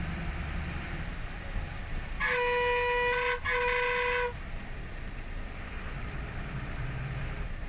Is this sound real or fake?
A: real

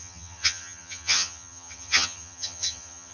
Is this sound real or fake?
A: fake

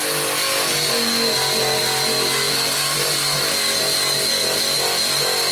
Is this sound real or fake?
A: real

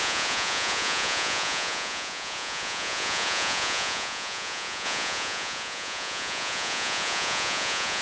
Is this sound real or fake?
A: fake